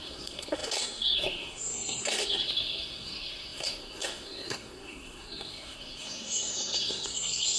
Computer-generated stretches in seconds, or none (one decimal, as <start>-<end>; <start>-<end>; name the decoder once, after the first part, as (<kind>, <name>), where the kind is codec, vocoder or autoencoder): 0.0-7.6 (codec, SNAC)